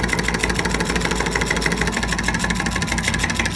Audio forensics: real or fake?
real